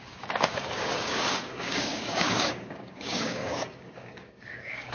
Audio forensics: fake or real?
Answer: fake